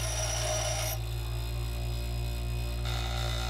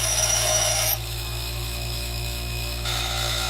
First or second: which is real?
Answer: first